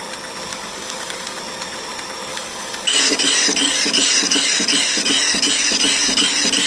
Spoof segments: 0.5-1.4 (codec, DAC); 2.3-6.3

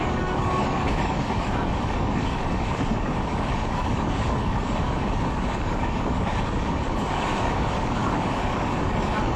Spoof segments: 0.0-9.4 (codec, DAC)

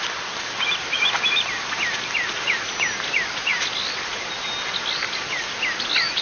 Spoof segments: none

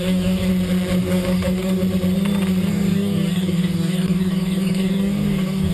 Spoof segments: 0.0-0.5 (codec, DAC); 1.0-1.8; 2.7-5.7

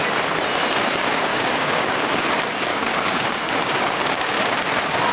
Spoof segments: 1.3-2.2 (codec, DAC); 2.7-4.5

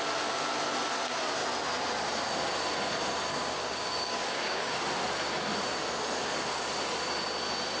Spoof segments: 3.3-4.8 (codec, DAC)

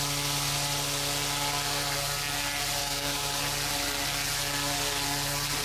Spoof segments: 2.8-3.4 (codec, DAC)

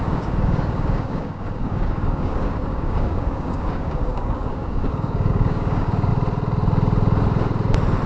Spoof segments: 0.0-6.1 (codec, DAC)